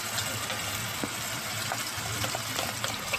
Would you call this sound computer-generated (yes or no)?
no